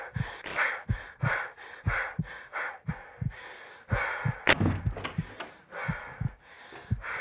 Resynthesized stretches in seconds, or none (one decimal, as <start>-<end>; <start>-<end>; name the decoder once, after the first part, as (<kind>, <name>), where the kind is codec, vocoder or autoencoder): none